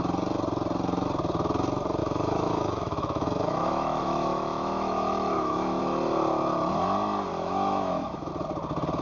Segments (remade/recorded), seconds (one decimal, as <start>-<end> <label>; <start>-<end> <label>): 0.0-2.0 recorded; 2.0-5.8 remade; 5.8-7.3 recorded; 7.3-8.3 remade; 8.3-9.0 recorded